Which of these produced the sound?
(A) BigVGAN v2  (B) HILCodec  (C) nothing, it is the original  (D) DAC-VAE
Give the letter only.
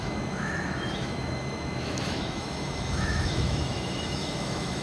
D